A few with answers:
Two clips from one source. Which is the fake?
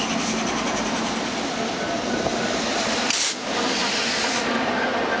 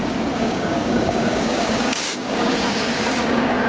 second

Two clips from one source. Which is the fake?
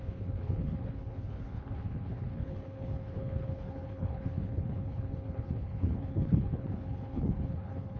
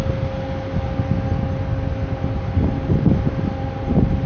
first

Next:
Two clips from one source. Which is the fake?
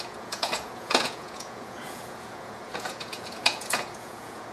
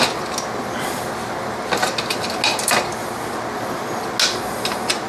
first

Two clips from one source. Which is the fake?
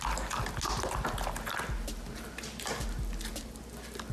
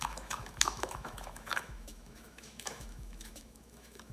second